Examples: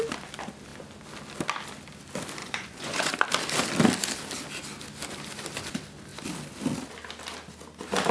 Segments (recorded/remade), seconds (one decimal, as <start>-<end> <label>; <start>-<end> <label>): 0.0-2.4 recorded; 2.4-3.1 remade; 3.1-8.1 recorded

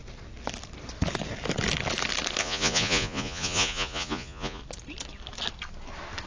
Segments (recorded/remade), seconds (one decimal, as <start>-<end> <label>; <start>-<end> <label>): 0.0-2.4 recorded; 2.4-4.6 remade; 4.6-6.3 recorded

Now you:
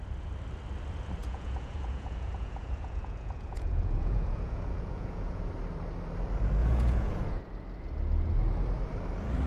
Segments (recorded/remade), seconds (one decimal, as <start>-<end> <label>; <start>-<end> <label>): 0.0-1.2 recorded; 1.2-5.5 remade; 5.5-6.6 recorded; 6.6-7.4 remade; 7.4-9.5 recorded

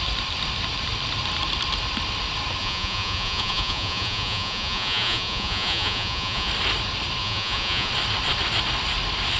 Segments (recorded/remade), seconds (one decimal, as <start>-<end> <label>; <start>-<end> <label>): 0.0-2.6 recorded; 2.6-6.5 remade; 6.5-7.2 recorded; 7.2-7.9 remade; 7.9-9.4 recorded

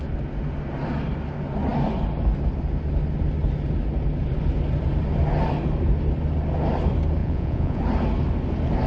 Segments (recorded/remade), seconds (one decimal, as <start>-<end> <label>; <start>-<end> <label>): 0.0-7.2 recorded; 7.2-7.8 remade; 7.8-8.9 recorded